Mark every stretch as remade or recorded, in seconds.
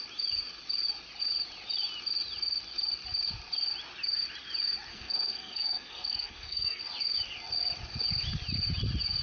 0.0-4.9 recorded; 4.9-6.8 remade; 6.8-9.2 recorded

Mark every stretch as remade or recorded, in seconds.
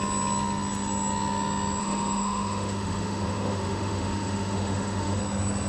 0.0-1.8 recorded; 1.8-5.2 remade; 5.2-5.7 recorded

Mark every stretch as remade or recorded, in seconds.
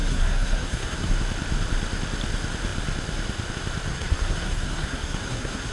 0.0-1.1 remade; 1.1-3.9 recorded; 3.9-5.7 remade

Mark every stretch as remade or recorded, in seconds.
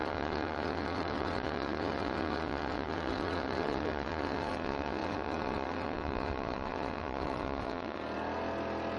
0.0-8.0 remade; 8.0-9.0 recorded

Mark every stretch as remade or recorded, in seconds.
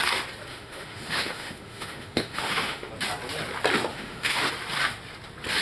0.0-0.5 recorded; 0.5-2.9 remade; 2.9-3.9 recorded; 3.9-4.5 remade; 4.5-5.6 recorded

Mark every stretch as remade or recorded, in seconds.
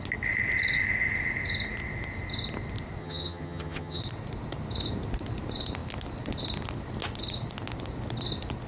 0.0-3.0 recorded; 3.0-4.0 remade; 4.0-8.7 recorded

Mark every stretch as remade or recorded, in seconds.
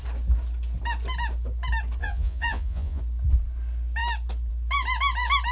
0.0-2.0 recorded; 2.0-3.0 remade; 3.0-5.5 recorded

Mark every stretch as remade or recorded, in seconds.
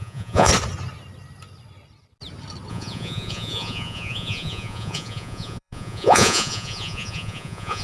0.0-0.5 remade; 0.5-2.7 recorded; 2.7-7.8 remade